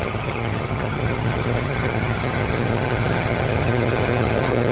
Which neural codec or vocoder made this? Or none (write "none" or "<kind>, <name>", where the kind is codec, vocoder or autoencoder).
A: vocoder, HiFi-GAN